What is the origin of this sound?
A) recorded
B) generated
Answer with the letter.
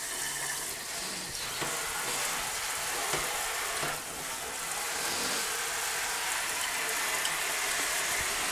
A